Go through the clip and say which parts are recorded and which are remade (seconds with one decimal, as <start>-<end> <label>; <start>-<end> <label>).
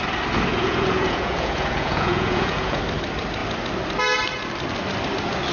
0.0-0.5 recorded; 0.5-2.8 remade; 2.8-5.5 recorded